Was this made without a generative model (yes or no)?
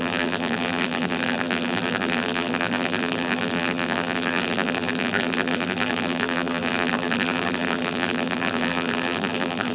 no